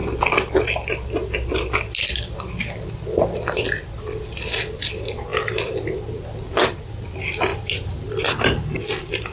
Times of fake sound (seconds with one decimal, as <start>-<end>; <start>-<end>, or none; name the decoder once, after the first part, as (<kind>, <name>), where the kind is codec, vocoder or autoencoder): none